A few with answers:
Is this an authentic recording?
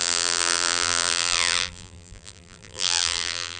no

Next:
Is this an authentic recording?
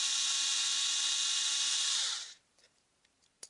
no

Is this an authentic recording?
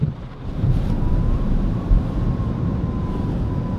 no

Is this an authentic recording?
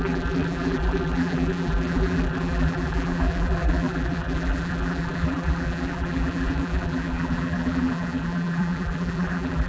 no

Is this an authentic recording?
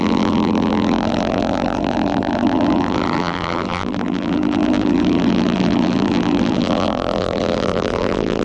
no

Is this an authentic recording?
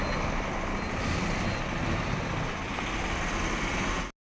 yes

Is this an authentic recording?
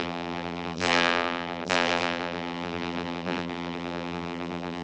no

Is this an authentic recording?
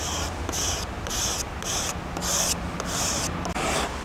yes